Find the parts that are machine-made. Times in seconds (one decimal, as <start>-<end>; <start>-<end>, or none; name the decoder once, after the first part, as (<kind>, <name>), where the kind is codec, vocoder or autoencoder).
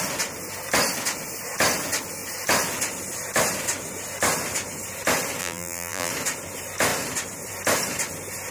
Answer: 5.4-6.1 (vocoder, BigVGAN v2)